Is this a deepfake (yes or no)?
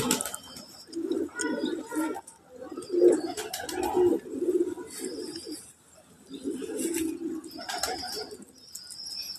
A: no